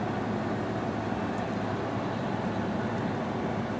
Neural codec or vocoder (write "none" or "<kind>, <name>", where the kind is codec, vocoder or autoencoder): none